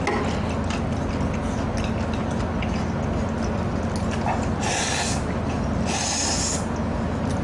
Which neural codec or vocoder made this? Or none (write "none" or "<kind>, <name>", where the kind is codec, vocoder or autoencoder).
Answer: none